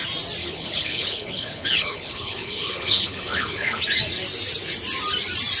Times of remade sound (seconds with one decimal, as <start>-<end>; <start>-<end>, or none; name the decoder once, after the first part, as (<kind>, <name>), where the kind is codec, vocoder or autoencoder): 0.4-3.8 (codec, HILCodec)